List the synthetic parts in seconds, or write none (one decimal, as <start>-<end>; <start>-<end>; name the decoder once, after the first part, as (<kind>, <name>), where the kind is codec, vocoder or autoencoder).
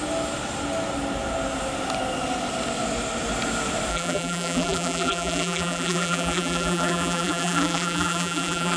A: 3.9-8.8 (vocoder, BigVGAN v2)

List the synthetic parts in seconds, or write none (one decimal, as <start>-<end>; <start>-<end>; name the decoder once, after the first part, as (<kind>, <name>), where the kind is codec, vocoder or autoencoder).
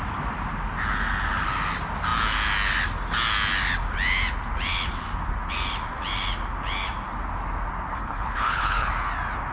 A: 7.9-8.9 (codec, HILCodec)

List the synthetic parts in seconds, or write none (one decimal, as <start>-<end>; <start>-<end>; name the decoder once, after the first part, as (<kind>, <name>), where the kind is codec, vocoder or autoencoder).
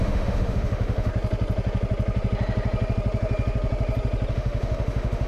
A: 0.0-1.1 (autoencoder, DAC-VAE); 4.3-5.3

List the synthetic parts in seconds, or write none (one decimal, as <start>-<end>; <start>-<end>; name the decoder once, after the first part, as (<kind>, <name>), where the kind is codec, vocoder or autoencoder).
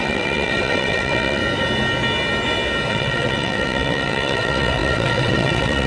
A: 0.0-1.4 (vocoder, WaveNeXt); 2.9-5.9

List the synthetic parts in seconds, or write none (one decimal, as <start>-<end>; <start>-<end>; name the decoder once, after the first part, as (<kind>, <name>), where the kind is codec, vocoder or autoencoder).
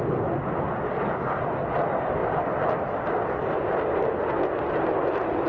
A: none